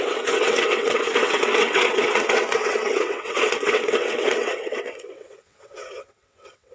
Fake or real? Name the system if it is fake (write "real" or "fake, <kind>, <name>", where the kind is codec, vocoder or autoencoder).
fake, vocoder, WaveNeXt